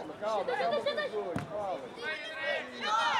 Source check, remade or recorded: recorded